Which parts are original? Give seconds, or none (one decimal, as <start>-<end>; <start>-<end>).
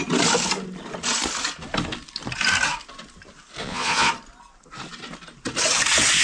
0.0-3.6; 4.1-6.2